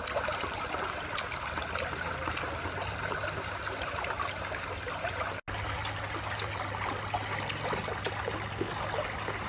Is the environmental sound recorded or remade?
recorded